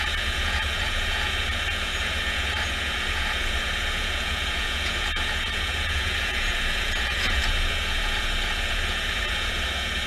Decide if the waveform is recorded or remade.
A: remade